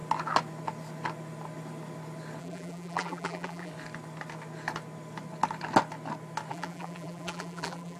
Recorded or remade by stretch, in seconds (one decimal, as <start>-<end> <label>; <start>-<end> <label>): 0.0-2.4 recorded; 2.4-3.7 remade; 3.7-6.5 recorded; 6.5-8.0 remade